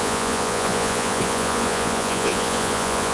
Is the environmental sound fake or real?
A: fake